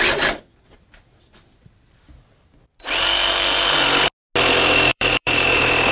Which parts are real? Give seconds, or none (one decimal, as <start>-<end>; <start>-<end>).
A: 0.0-4.9